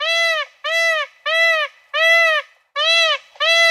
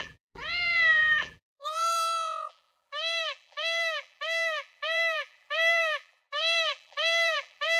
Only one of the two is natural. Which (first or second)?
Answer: first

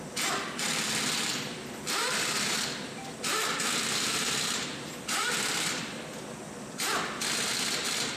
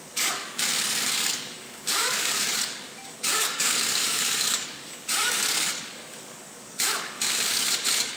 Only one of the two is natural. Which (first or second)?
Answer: first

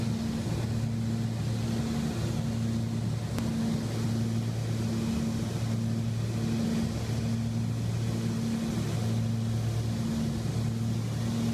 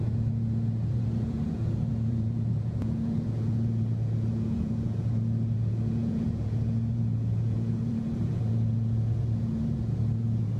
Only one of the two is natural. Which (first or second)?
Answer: first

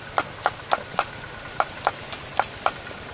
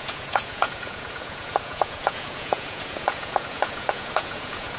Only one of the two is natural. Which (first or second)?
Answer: first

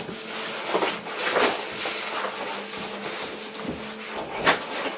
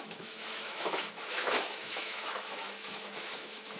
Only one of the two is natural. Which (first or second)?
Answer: first